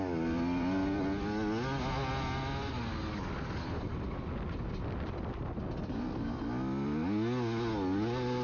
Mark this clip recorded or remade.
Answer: recorded